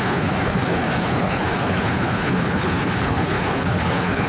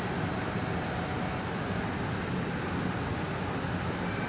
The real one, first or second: second